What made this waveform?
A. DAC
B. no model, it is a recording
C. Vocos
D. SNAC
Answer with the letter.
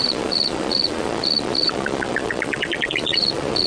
C